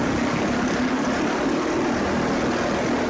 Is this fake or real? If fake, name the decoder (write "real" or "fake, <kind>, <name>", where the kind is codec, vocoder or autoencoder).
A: real